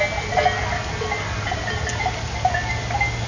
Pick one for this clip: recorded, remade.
recorded